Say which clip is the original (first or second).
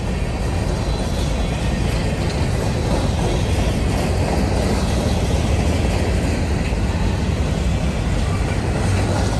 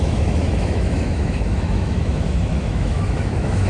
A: first